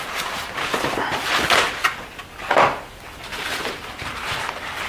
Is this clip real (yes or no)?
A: yes